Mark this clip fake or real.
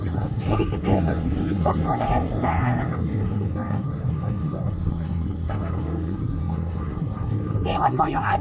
fake